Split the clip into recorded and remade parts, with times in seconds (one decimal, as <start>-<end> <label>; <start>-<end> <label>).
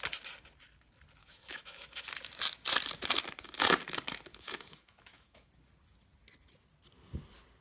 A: 0.0-1.2 recorded; 1.2-2.0 remade; 2.0-4.3 recorded; 4.3-5.5 remade; 5.5-7.6 recorded